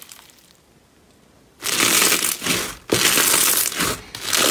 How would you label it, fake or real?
real